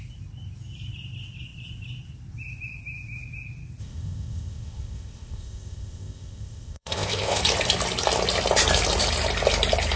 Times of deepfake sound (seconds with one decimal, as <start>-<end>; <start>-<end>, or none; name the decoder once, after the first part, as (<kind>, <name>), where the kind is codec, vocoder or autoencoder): 3.8-7.4 (codec, ZipCodec)